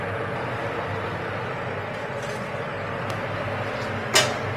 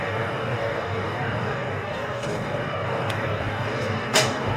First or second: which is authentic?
first